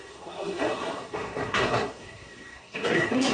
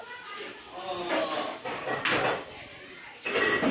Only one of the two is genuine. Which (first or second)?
second